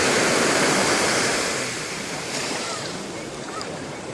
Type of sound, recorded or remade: remade